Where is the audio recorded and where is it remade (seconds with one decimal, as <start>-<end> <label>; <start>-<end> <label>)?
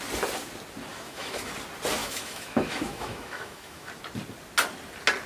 0.0-0.9 recorded; 0.9-1.5 remade; 1.5-2.0 recorded; 2.0-3.9 remade; 3.9-5.3 recorded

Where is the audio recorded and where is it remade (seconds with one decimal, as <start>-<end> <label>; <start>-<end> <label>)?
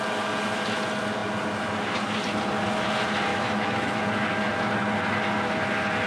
0.0-3.3 recorded; 3.3-4.0 remade; 4.0-6.1 recorded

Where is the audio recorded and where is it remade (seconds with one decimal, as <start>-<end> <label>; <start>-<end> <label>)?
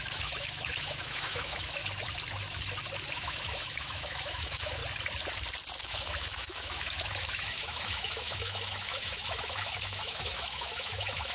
0.0-1.8 remade; 1.8-3.1 recorded; 3.1-4.8 remade; 4.8-5.8 recorded; 5.8-11.3 remade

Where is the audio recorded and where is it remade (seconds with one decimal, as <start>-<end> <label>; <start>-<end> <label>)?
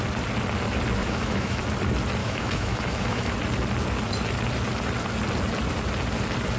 0.0-1.0 recorded; 1.0-1.6 remade; 1.6-2.2 recorded; 2.2-3.3 remade; 3.3-6.6 recorded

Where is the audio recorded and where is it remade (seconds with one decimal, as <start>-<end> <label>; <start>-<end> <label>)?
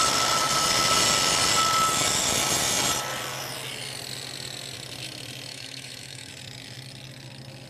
0.0-5.5 recorded; 5.5-6.3 remade; 6.3-7.7 recorded